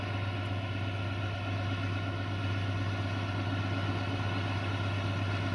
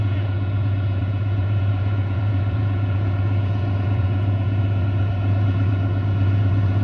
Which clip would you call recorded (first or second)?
first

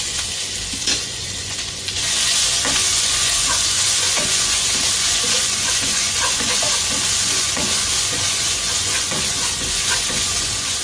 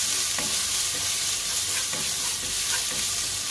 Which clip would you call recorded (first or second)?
second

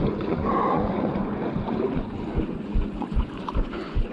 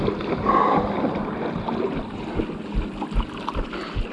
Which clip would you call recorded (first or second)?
second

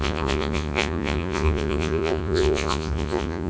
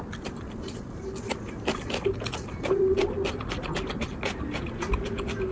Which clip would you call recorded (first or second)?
second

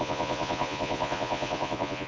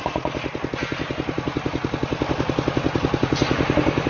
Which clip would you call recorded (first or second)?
second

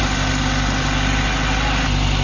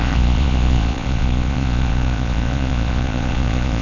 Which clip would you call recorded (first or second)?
first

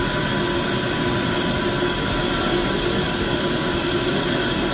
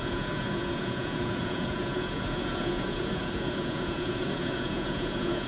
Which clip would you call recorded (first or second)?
first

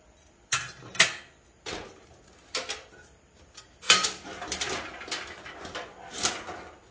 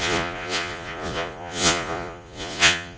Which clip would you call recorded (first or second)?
first